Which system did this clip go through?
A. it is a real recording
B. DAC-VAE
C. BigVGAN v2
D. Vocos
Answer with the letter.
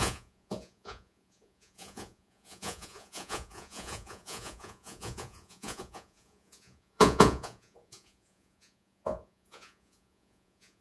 D